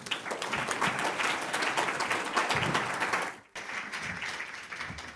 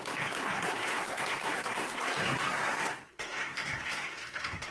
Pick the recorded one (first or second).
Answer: first